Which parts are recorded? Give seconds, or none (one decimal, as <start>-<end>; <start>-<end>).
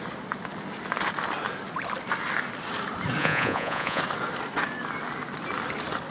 0.0-3.2; 4.0-6.1